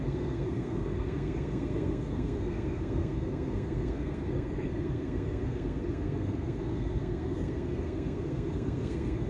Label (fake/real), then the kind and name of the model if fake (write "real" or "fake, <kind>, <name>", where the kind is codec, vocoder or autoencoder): fake, codec, SNAC